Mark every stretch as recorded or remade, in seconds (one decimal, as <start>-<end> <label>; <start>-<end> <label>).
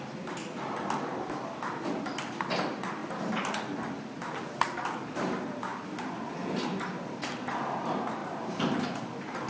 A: 0.0-8.2 recorded; 8.2-9.5 remade